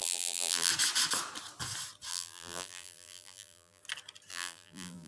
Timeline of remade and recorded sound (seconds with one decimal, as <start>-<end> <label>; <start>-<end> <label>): 0.0-0.7 remade; 0.7-2.1 recorded; 2.1-3.8 remade; 3.8-4.3 recorded; 4.3-5.1 remade